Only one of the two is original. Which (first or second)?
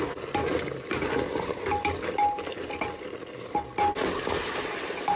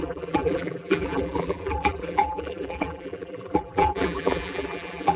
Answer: first